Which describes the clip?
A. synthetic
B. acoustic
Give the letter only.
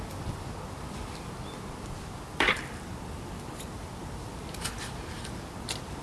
B